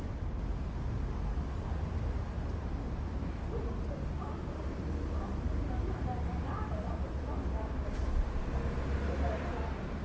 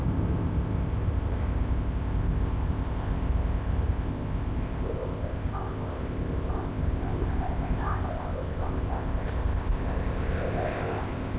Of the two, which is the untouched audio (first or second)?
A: first